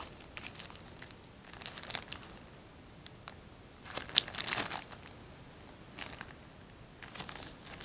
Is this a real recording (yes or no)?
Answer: yes